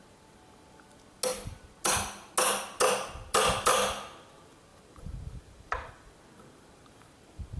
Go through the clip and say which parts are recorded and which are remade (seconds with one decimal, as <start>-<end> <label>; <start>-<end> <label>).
0.0-7.6 recorded